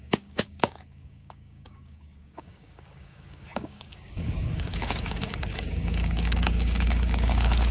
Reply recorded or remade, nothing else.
remade